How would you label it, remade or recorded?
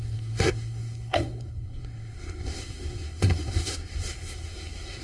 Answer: remade